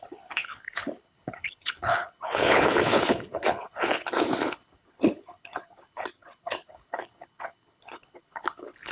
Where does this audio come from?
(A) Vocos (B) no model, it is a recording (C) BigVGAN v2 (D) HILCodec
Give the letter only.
D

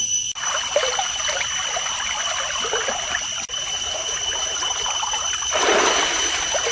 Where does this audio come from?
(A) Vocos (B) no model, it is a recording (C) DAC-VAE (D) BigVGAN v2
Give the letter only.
B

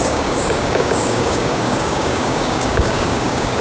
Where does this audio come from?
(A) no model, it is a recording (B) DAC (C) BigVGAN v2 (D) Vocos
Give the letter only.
B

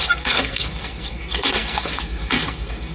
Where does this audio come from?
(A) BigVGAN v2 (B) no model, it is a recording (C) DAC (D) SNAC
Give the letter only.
D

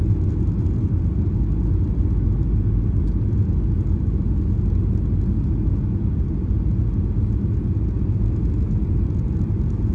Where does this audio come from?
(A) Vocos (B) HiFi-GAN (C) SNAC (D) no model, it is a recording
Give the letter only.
D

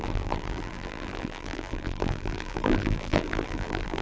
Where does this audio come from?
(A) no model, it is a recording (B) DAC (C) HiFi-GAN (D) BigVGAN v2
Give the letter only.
D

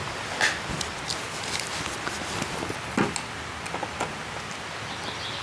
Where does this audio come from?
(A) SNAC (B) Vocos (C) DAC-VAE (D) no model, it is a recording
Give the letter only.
D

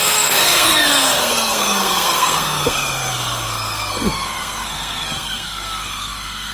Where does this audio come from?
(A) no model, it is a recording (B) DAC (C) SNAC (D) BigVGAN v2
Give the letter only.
C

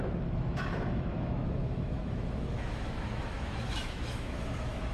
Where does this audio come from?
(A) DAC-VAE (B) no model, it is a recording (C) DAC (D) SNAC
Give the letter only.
A